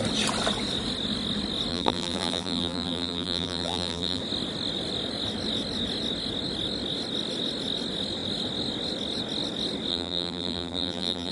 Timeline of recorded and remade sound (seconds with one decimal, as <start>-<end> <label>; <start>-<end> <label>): 0.0-1.7 recorded; 1.7-4.2 remade; 4.2-9.9 recorded; 9.9-11.3 remade